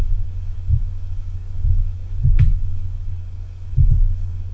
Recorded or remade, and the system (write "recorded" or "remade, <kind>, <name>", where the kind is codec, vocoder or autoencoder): remade, codec, DAC